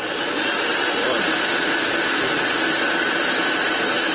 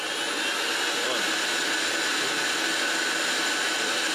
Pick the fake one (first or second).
first